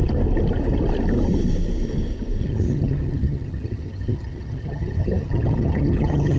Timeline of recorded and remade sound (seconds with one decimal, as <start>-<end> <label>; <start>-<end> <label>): 0.0-2.4 recorded; 2.4-6.4 remade